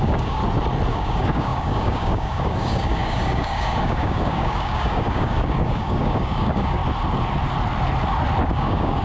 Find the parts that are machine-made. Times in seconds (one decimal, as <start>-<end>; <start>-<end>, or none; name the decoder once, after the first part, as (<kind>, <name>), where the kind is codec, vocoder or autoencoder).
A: 0.0-0.4 (codec, DAC); 0.9-6.8; 8.5-9.0

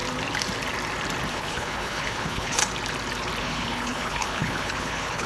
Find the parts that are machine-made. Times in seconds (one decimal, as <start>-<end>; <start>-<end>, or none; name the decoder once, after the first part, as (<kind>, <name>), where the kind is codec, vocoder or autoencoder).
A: 1.3-2.6 (codec, HILCodec); 3.4-5.3

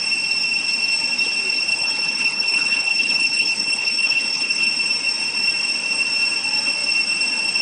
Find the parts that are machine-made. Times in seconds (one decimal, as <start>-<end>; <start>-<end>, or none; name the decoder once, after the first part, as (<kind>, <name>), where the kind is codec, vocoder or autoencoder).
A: 1.7-4.7 (codec, HILCodec)

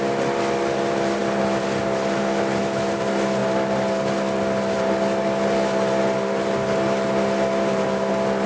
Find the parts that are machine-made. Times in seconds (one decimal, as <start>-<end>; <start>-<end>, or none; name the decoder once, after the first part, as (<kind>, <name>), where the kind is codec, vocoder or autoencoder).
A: none

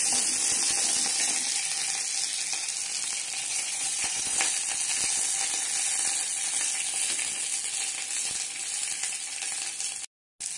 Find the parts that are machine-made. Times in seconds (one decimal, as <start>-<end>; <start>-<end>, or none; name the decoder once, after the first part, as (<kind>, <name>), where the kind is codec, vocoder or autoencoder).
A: 3.5-4.4 (vocoder, Vocos)